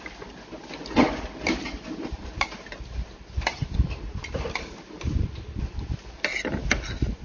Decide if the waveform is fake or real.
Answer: real